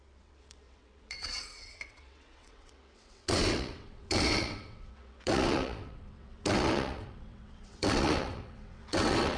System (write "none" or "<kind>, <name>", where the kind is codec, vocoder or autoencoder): vocoder, WaveNeXt